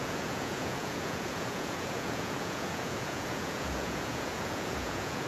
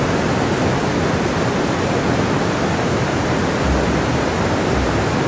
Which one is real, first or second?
second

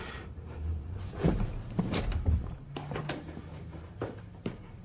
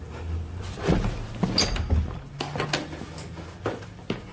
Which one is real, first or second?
second